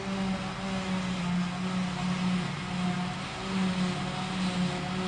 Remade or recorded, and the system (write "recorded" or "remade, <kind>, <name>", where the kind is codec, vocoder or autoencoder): recorded